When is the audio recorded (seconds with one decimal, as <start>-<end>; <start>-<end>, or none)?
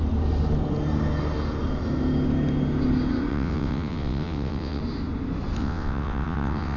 0.0-3.3; 4.8-5.6